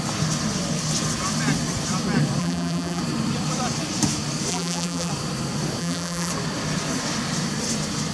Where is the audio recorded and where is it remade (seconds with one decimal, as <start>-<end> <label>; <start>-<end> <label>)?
0.0-2.4 recorded; 2.4-3.0 remade; 3.0-4.5 recorded; 4.5-5.1 remade; 5.1-5.8 recorded; 5.8-6.3 remade; 6.3-8.1 recorded